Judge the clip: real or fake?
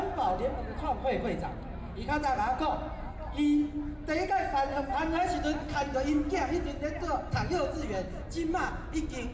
real